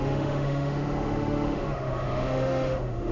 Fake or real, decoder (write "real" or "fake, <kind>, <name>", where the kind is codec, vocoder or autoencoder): fake, autoencoder, DAC-VAE